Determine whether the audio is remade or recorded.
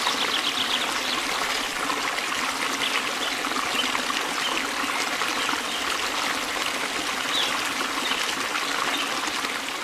recorded